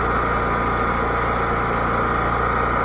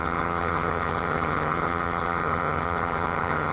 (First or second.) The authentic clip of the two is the first